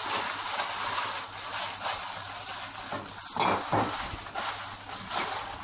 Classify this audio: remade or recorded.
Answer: recorded